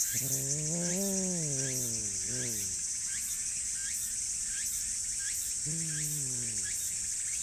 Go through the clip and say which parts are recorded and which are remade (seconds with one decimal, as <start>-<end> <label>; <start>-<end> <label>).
0.0-7.4 recorded